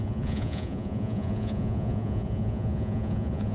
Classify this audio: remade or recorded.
remade